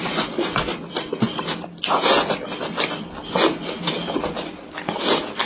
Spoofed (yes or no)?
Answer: no